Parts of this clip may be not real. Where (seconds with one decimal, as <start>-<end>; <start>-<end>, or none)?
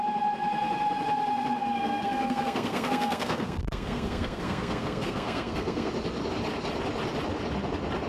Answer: 1.6-5.9